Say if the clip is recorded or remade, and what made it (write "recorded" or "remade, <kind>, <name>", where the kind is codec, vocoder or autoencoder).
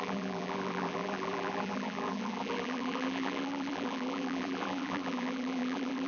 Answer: remade, vocoder, BigVGAN v2